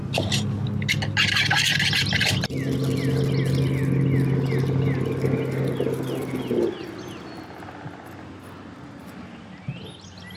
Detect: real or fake real